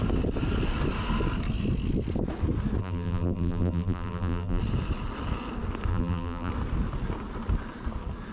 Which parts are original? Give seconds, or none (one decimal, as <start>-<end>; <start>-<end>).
0.0-2.8; 4.6-5.9; 6.5-8.3